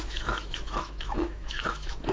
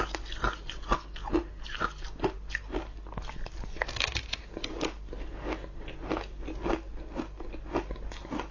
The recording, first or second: second